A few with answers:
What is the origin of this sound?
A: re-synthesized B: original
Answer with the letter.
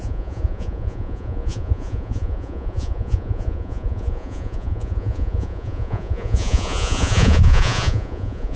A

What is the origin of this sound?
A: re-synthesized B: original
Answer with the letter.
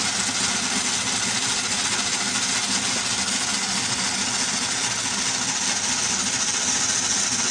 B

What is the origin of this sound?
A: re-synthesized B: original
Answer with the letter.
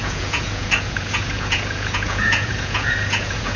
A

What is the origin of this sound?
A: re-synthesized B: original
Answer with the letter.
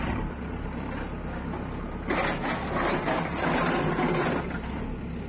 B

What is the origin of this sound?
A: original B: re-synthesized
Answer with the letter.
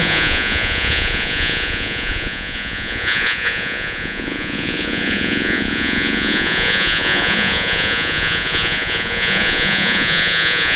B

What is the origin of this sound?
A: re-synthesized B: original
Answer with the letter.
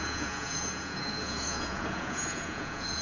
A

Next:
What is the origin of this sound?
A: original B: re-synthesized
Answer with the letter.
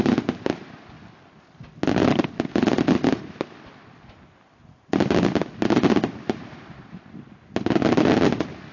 A